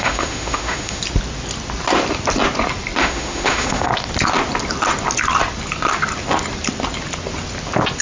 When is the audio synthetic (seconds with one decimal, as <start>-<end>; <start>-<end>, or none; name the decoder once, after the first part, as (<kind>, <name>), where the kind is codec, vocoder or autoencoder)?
0.0-1.0 (autoencoder, DAC-VAE); 3.0-3.9

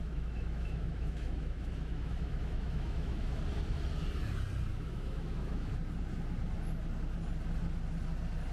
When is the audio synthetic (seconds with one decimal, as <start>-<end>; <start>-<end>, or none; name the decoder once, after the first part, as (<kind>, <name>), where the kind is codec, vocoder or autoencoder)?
0.0-3.4 (autoencoder, DAC-VAE); 4.7-5.7